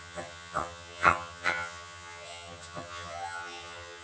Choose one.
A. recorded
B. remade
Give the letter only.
B